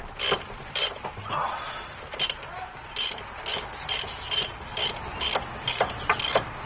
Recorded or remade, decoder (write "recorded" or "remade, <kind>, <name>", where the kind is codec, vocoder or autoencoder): recorded